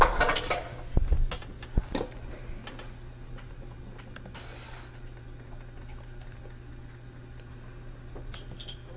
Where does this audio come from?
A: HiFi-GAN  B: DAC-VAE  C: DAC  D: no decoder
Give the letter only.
D